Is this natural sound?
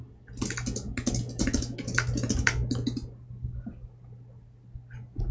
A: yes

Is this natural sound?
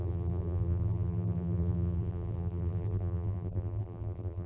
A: no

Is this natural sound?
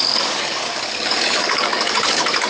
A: no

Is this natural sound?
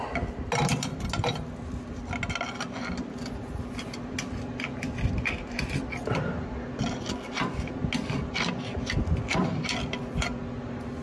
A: yes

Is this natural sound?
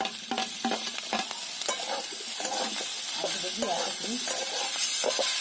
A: yes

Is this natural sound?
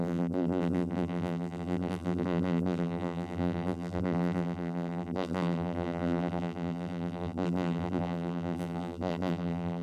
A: no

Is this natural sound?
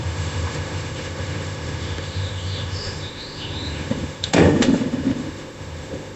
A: no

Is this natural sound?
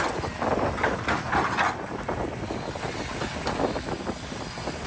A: yes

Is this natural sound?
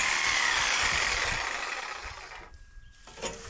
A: yes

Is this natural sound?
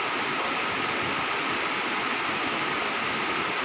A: yes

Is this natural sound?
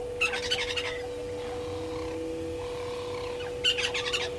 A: yes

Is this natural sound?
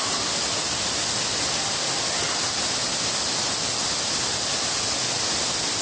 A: yes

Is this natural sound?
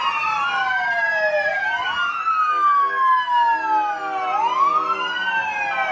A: yes